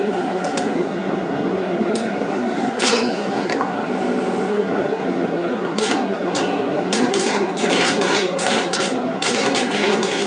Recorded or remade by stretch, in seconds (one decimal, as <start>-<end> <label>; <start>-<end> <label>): 0.0-3.9 remade; 3.9-4.5 recorded; 4.5-10.3 remade